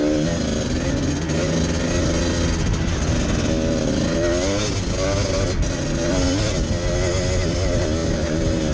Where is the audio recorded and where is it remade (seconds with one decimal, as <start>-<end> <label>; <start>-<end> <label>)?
0.0-8.0 recorded; 8.0-8.7 remade